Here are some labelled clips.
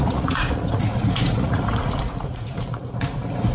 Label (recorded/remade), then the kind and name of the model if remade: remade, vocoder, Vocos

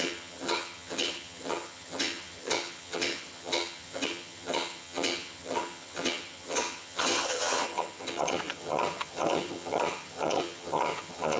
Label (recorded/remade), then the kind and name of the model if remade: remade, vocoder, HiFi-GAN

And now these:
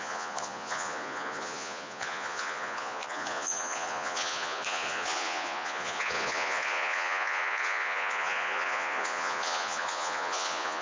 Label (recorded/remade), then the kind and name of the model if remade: remade, vocoder, Vocos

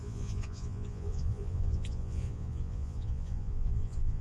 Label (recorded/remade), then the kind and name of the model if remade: remade, vocoder, Vocos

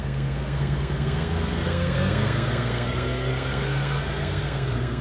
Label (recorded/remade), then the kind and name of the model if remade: remade, codec, SNAC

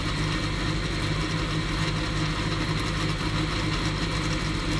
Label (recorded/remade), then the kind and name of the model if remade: recorded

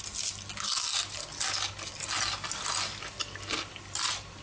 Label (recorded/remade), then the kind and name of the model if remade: recorded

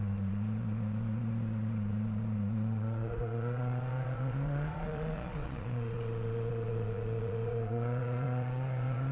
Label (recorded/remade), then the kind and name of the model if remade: remade, vocoder, Vocos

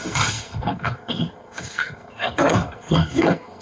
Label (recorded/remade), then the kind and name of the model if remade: remade, codec, SNAC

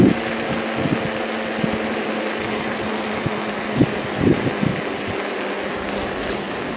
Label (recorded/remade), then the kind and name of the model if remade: recorded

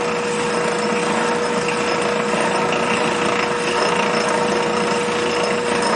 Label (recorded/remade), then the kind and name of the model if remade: recorded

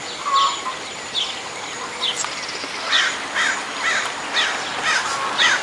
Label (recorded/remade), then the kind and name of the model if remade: recorded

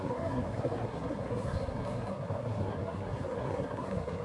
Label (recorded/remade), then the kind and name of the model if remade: remade, codec, SNAC